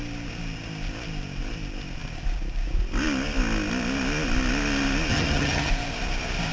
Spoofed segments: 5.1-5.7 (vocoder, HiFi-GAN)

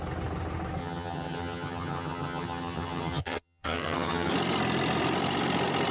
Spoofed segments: 0.8-4.3 (vocoder, HiFi-GAN)